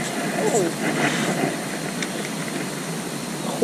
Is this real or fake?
real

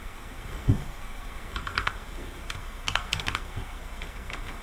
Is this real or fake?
fake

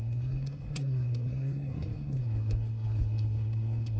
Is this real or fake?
fake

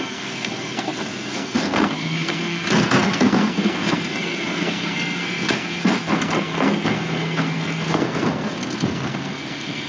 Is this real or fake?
fake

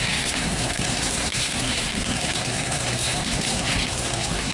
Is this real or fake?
fake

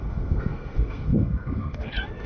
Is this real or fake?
fake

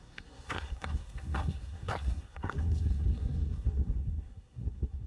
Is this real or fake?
fake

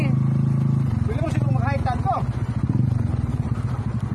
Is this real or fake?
real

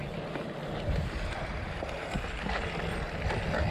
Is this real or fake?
real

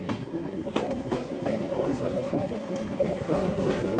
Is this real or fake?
fake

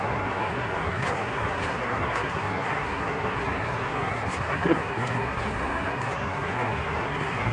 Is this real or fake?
fake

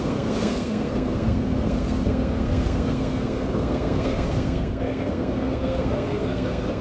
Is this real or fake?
fake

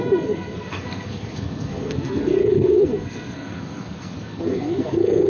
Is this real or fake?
fake